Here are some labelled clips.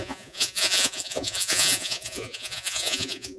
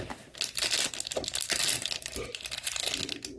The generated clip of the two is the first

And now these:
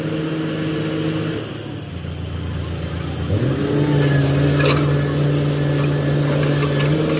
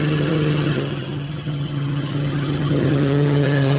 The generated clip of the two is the second